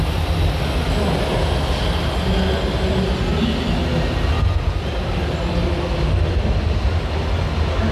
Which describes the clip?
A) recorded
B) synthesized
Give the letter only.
A